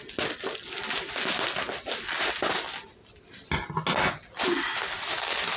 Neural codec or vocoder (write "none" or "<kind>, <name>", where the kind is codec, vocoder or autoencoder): none